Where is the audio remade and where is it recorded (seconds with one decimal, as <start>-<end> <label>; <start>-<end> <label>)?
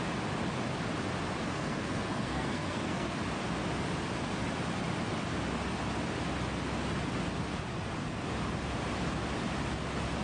0.0-1.4 recorded; 1.4-3.1 remade; 3.1-10.2 recorded